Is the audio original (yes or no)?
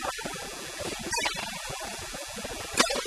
yes